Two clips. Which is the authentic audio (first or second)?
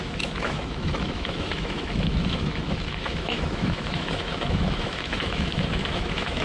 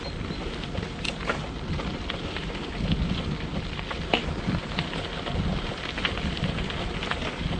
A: second